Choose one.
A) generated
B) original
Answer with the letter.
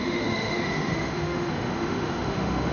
A